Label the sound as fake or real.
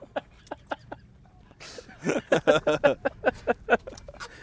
real